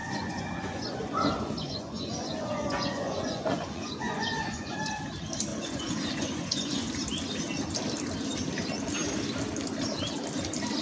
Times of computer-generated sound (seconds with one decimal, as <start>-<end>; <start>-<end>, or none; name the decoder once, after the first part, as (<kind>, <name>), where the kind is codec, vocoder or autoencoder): 0.0-4.9 (vocoder, Vocos); 5.5-6.9